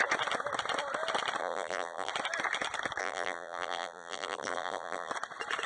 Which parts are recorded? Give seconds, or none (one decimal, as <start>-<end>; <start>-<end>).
0.0-1.4; 2.1-3.0; 5.1-5.7